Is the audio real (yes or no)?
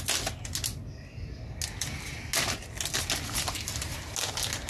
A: yes